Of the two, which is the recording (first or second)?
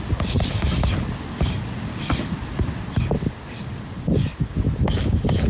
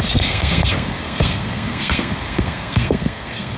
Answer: first